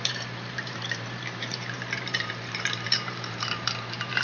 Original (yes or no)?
no